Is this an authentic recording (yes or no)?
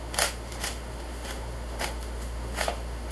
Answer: no